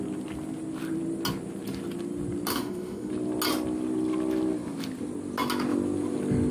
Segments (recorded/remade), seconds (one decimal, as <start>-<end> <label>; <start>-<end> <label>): 0.0-2.5 recorded; 2.5-3.1 remade; 3.1-6.5 recorded